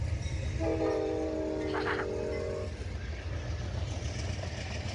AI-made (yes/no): no